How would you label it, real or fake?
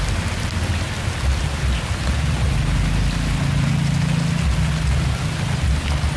real